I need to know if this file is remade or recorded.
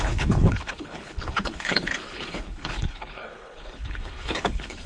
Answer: remade